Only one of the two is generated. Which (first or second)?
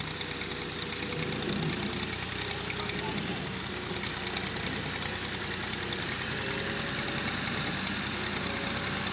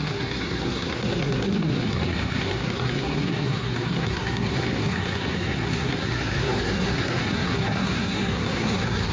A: second